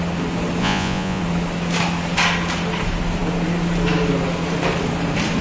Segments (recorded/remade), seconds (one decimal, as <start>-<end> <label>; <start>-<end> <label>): 0.0-0.6 recorded; 0.6-1.2 remade; 1.2-5.4 recorded